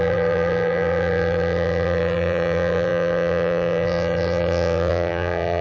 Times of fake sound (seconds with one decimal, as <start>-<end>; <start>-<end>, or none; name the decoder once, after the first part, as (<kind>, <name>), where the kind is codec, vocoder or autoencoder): 0.0-5.6 (vocoder, BigVGAN v2)